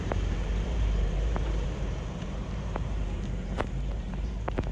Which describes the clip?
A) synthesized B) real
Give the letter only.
A